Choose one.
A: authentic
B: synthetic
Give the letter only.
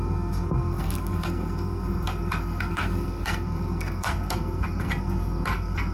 B